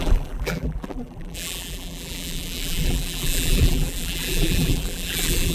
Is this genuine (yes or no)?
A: no